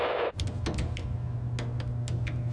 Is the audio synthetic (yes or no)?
no